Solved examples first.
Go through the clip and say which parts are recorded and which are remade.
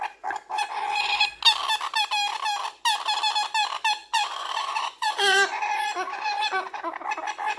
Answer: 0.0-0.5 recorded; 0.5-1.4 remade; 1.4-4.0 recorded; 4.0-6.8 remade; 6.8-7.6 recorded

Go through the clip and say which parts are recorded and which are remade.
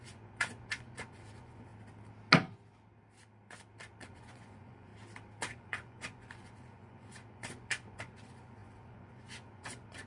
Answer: 0.0-1.7 remade; 1.7-4.0 recorded; 4.0-4.9 remade; 4.9-5.5 recorded; 5.5-10.1 remade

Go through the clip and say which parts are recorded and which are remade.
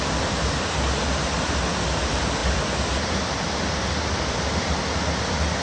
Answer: 0.0-5.6 recorded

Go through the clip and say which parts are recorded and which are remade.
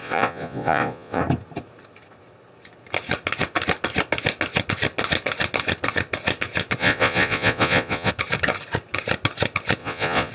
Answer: 0.0-1.2 remade; 1.2-6.8 recorded; 6.8-8.1 remade; 8.1-9.8 recorded; 9.8-10.3 remade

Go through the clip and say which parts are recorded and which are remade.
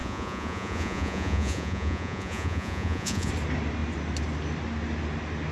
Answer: 0.0-3.3 remade; 3.3-5.5 recorded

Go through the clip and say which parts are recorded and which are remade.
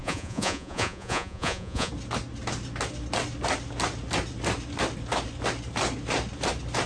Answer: 0.0-1.9 remade; 1.9-6.9 recorded